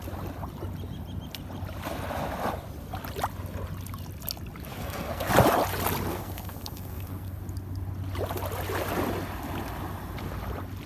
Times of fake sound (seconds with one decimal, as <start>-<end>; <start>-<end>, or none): 4.7-5.3; 6.1-7.4